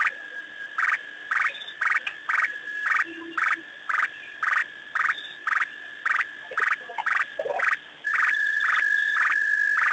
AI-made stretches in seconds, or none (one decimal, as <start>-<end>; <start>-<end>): 0.0-4.6; 7.6-9.9